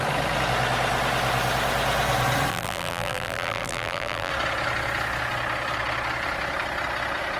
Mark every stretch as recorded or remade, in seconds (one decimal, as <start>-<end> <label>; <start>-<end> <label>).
0.0-2.5 recorded; 2.5-4.3 remade; 4.3-7.4 recorded